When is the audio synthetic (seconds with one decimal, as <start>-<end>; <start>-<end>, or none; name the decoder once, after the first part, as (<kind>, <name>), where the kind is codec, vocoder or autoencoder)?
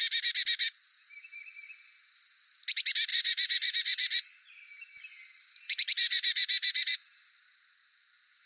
3.1-7.4 (vocoder, BigVGAN v2)